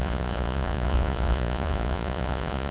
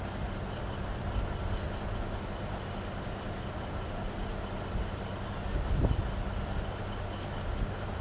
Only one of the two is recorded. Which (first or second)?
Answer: second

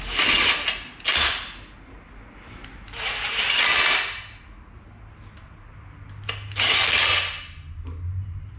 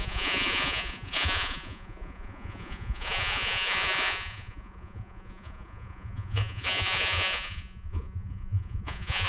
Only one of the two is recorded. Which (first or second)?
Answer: first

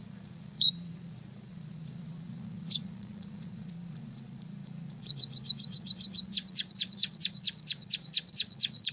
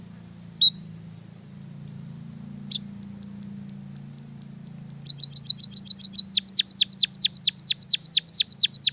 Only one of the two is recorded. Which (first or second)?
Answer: second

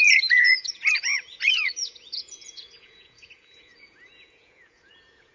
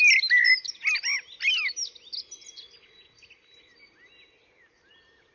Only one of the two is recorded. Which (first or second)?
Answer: second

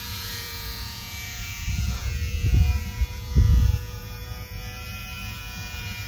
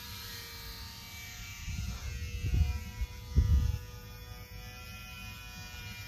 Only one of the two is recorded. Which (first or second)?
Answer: second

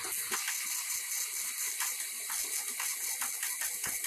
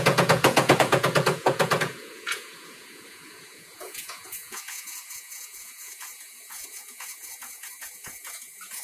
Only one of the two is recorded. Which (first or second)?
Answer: first